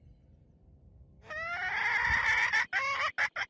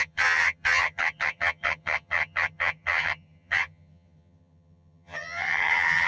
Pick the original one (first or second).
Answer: first